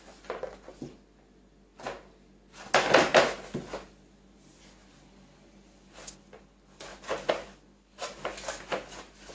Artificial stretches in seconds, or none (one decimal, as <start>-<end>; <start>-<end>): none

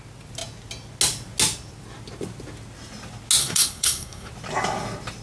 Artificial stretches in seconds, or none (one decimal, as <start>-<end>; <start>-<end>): 3.4-4.3

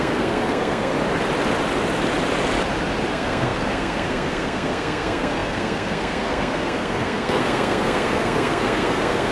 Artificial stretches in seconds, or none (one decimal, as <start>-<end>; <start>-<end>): 0.0-0.9; 3.1-9.3